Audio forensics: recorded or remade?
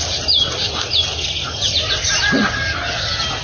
recorded